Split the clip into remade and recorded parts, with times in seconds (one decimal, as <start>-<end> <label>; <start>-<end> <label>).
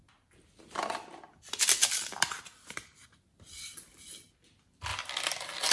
0.0-5.7 recorded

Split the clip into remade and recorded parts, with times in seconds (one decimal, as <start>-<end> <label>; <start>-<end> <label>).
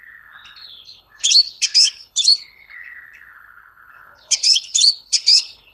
0.0-5.7 remade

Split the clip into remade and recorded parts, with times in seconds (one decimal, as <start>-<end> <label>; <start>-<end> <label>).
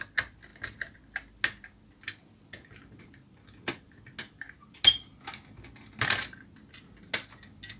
0.0-7.8 recorded